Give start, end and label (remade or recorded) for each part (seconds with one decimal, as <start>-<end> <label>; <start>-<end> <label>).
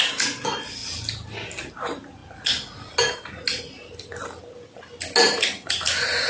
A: 0.0-6.3 recorded